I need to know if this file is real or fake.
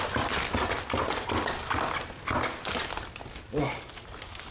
real